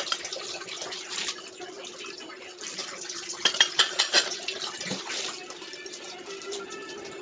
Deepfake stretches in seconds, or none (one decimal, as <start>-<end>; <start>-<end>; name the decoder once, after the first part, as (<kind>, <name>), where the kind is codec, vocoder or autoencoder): none

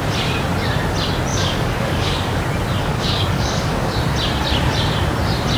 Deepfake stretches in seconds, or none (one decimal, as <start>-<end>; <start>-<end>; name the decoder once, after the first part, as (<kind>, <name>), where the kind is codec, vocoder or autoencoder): 1.3-2.4 (codec, DAC); 2.8-3.9